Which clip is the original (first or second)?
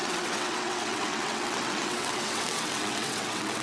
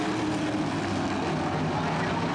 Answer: second